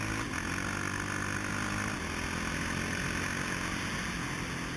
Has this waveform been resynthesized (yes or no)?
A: no